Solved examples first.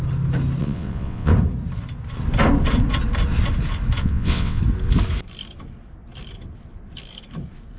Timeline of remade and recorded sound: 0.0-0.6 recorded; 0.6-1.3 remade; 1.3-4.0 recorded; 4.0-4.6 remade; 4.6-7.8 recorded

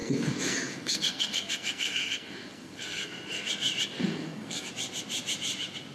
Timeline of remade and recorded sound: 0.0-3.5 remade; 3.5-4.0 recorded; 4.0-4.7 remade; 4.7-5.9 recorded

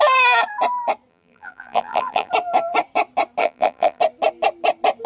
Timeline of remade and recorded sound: 0.0-1.1 recorded; 1.1-2.3 remade; 2.3-3.4 recorded; 3.4-4.0 remade; 4.0-5.1 recorded